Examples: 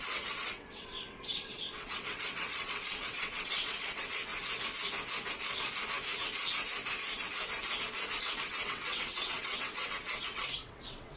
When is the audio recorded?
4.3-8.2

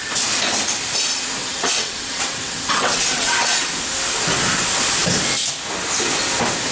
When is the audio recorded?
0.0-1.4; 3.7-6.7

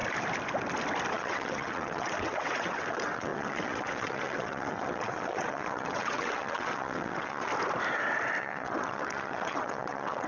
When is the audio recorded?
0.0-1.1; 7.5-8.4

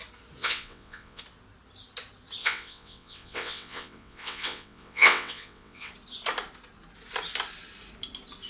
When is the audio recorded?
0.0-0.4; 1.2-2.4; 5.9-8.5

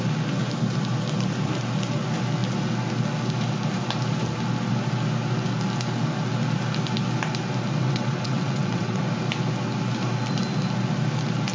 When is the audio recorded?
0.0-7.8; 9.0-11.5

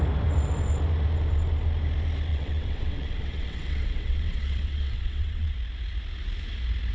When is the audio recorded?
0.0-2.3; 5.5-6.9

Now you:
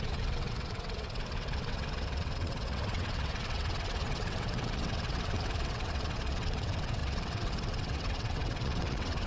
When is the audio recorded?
none

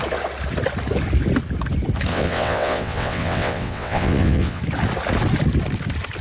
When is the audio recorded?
0.0-2.1; 4.6-6.2